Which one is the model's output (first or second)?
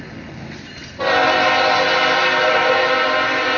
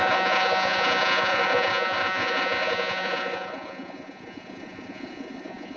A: second